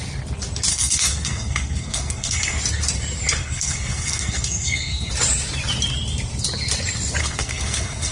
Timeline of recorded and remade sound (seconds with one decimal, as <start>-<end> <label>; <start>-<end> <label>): 0.0-0.7 recorded; 0.7-2.6 remade; 2.6-3.4 recorded; 3.4-5.1 remade; 5.1-7.2 recorded; 7.2-8.1 remade